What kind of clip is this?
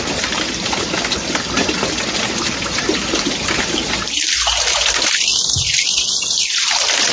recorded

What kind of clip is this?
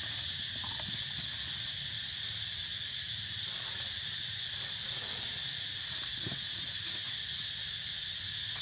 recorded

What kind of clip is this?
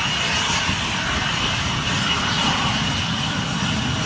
recorded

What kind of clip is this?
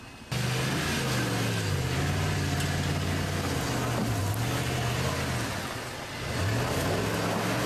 recorded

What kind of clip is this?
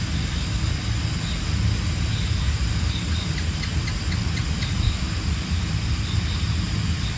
recorded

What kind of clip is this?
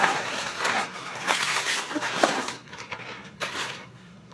remade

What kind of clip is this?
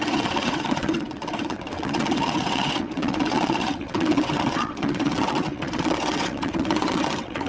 remade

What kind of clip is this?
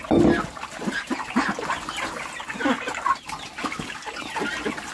recorded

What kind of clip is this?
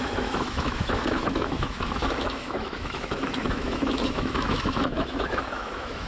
remade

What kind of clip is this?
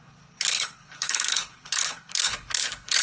remade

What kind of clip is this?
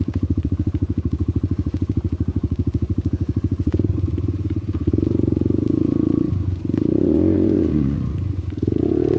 remade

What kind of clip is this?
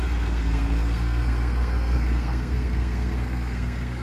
remade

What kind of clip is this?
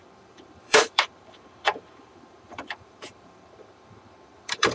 remade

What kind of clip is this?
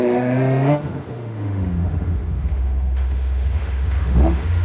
remade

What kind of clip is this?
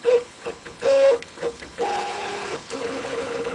remade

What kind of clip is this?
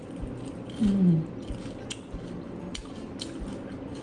recorded